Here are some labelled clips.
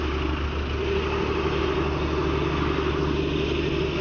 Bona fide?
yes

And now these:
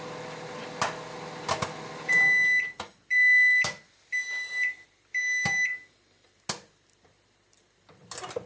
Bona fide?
yes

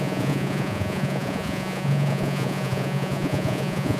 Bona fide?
no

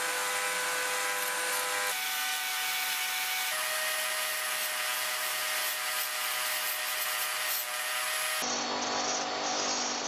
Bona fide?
yes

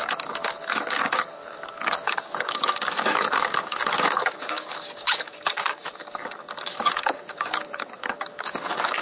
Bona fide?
no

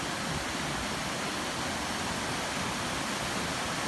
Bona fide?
yes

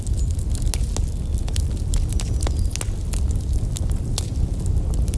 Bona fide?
yes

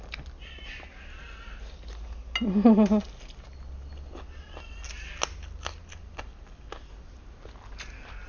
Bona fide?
yes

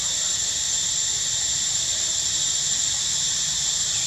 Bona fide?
yes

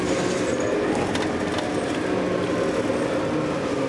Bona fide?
yes